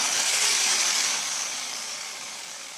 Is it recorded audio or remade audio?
remade